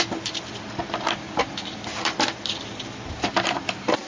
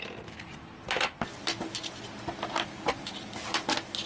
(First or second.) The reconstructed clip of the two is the first